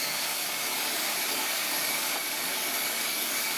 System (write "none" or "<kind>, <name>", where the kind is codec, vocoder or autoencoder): codec, DAC